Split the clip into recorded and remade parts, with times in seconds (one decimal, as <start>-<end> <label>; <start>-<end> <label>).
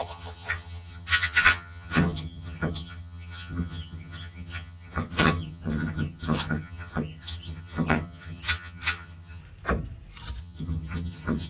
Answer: 0.0-9.4 remade; 9.4-10.4 recorded; 10.4-11.5 remade